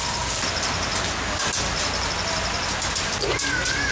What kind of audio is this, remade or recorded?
recorded